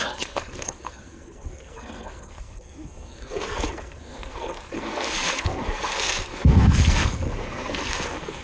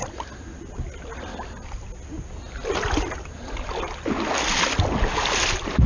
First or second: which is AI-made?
first